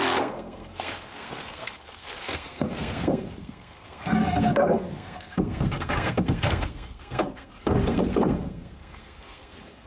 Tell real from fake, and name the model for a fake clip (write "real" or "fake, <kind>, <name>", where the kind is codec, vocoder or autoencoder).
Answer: fake, codec, SNAC